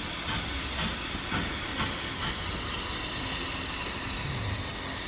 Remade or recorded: recorded